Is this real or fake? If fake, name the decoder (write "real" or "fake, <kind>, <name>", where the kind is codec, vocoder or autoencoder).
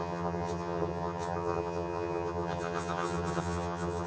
fake, vocoder, HiFi-GAN